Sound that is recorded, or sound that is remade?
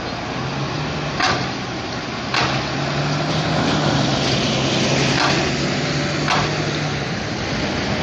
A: recorded